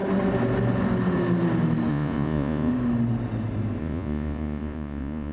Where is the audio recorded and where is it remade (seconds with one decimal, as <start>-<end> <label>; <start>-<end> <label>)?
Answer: 0.0-1.9 recorded; 1.9-2.7 remade; 2.7-3.8 recorded; 3.8-5.3 remade